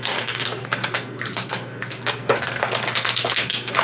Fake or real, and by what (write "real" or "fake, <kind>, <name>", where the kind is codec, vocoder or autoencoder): fake, codec, SNAC